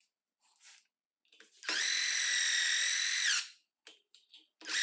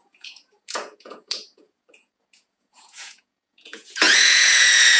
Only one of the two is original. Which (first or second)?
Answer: first